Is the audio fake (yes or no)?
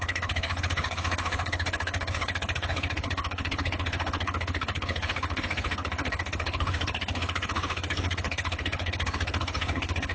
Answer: yes